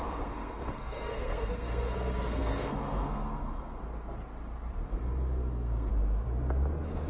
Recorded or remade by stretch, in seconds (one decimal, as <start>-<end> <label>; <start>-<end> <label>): 0.0-3.8 remade; 3.8-4.9 recorded; 4.9-5.9 remade; 5.9-7.1 recorded